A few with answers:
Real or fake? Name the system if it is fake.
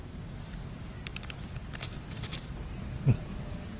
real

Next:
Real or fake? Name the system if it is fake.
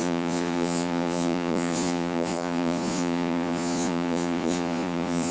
fake, vocoder, Vocos